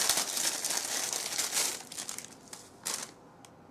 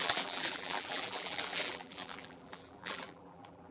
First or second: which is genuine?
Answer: first